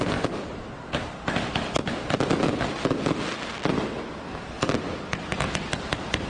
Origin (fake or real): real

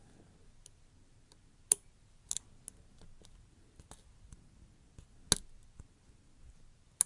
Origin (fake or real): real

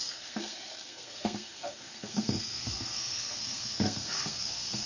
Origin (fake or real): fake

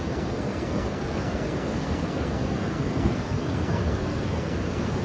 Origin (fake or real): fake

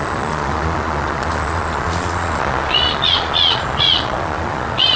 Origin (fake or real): fake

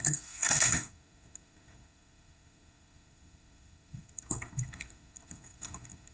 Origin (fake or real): fake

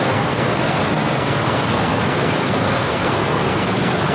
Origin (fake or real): fake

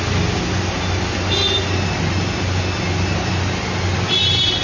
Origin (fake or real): real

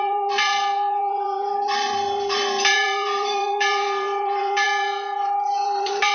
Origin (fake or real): fake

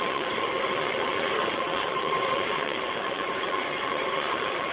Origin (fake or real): fake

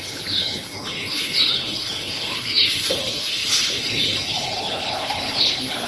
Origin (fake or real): fake